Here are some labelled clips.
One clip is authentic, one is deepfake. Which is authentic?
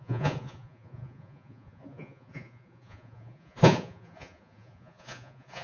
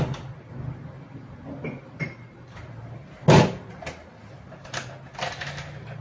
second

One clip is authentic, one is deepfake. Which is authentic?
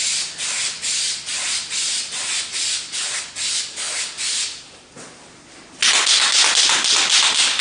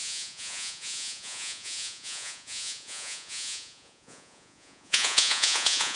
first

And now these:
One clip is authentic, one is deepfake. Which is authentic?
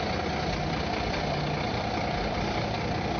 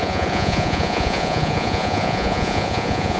first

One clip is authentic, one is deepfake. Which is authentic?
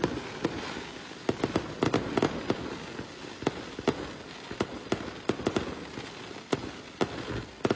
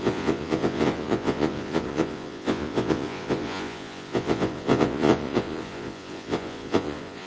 first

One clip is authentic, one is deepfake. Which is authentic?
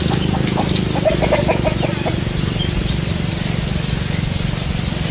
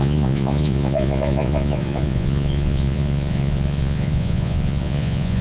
first